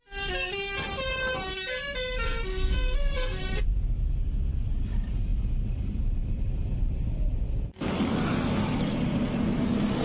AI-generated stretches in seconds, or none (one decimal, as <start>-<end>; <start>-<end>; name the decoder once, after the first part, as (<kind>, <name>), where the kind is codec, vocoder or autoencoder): 2.5-3.4 (codec, SNAC)